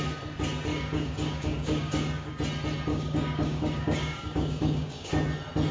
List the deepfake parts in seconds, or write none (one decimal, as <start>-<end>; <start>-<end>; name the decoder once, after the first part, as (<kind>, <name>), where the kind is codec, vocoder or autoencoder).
0.7-2.3 (codec, DAC); 2.9-5.1

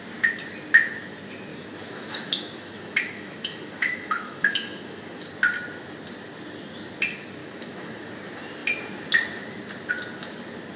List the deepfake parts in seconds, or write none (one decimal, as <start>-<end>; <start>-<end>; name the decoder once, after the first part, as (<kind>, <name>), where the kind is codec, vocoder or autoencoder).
1.5-5.2 (autoencoder, DAC-VAE); 7.4-8.1

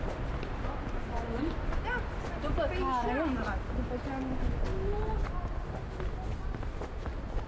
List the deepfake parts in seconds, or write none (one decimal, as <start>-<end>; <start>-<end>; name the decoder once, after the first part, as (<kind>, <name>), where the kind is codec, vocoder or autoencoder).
none

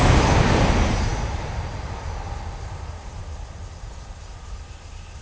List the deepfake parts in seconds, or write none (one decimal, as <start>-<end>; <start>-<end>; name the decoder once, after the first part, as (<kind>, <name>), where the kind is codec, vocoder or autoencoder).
none

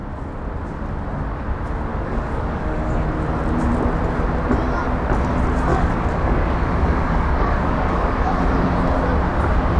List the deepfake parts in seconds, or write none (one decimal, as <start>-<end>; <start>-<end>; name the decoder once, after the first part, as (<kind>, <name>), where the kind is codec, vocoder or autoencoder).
1.9-2.9 (codec, DAC); 5.7-8.4

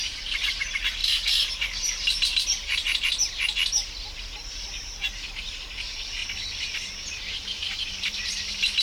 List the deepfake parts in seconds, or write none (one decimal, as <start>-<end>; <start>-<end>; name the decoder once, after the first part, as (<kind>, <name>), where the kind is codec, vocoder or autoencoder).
0.0-8.8 (vocoder, BigVGAN v2)

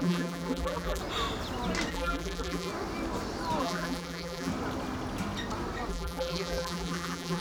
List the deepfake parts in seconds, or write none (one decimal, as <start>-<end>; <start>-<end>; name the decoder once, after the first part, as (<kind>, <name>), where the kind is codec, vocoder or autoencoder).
0.0-1.0 (vocoder, BigVGAN v2); 1.9-2.7; 3.6-4.5; 5.9-7.4

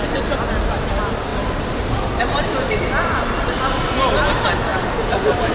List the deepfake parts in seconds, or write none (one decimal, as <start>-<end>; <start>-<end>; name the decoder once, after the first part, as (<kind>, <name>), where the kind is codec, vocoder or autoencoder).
1.3-2.2 (vocoder, BigVGAN v2); 4.7-5.5